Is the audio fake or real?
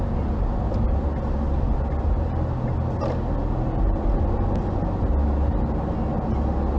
real